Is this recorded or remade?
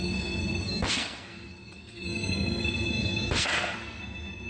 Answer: remade